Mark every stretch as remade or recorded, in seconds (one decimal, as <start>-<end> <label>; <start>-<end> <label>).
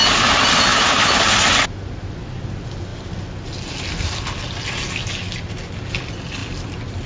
0.0-0.7 recorded; 0.7-1.2 remade; 1.2-7.1 recorded